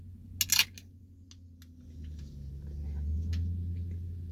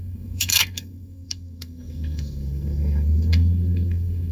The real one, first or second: first